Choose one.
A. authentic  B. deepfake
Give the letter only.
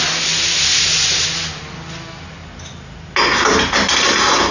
A